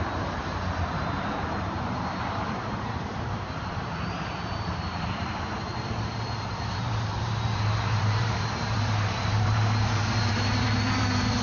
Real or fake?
fake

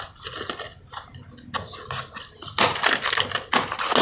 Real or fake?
real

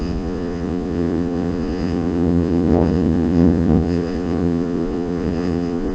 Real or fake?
fake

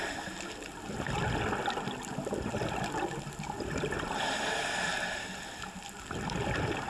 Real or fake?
real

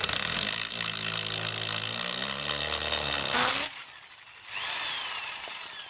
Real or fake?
real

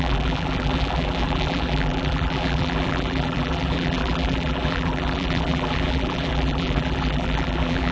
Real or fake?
fake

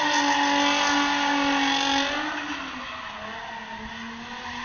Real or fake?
real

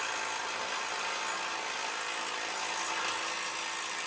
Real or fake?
real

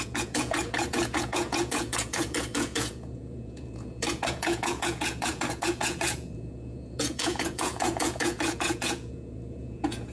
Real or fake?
fake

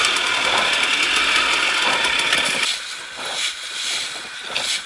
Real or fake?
real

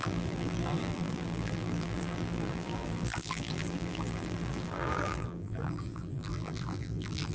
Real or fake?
fake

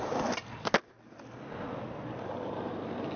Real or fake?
real